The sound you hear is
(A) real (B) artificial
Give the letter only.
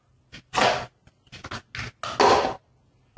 A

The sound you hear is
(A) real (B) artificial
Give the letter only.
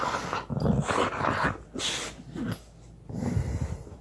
A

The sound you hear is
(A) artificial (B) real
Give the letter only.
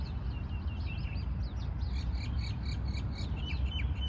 B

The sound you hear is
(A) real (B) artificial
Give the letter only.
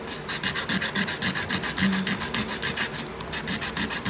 A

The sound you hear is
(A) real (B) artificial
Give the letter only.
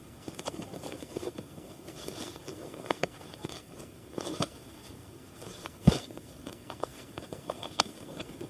B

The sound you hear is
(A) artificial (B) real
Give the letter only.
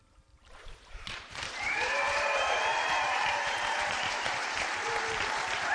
A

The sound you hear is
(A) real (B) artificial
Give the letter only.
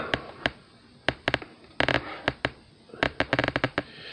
A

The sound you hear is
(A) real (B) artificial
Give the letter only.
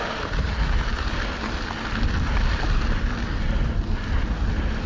A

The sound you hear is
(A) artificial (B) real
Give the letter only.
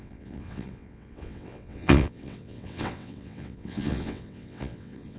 A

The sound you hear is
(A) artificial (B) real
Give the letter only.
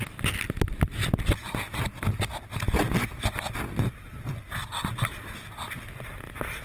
B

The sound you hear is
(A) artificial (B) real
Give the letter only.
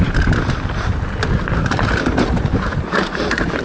B